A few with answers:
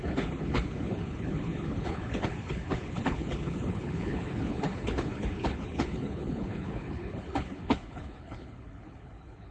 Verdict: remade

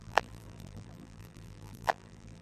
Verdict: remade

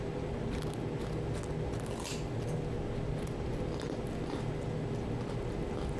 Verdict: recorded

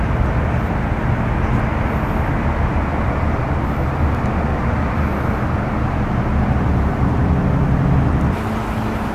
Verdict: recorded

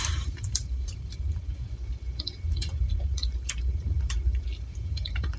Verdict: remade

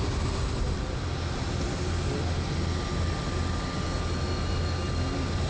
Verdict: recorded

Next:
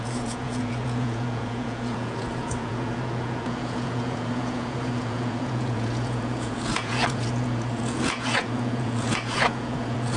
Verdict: remade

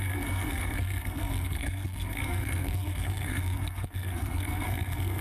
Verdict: remade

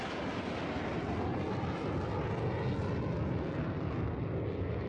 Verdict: recorded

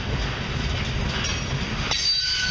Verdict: recorded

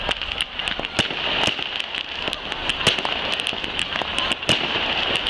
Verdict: recorded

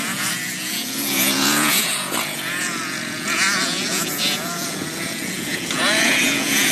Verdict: remade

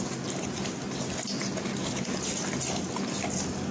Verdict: recorded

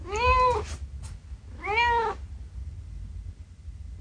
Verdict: recorded